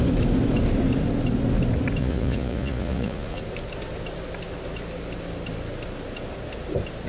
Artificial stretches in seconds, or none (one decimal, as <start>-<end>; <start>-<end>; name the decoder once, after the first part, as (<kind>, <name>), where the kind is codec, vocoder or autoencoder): 2.0-3.4 (vocoder, Vocos)